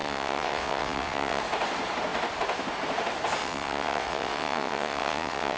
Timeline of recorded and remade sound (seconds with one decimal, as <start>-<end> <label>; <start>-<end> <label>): 0.0-1.4 remade; 1.4-3.4 recorded; 3.4-5.6 remade